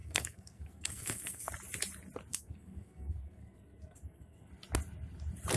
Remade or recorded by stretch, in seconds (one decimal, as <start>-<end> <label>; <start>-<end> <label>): 0.0-1.5 remade; 1.5-2.3 recorded; 2.3-4.5 remade; 4.5-5.6 recorded